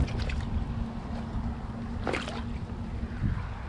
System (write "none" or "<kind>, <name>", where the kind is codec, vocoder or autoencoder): none